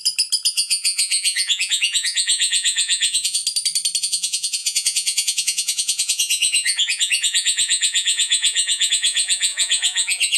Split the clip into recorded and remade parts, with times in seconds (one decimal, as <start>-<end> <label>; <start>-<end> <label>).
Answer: 0.0-0.5 recorded; 0.5-3.4 remade; 3.4-4.0 recorded; 4.0-10.4 remade